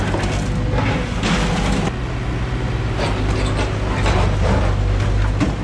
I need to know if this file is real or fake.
real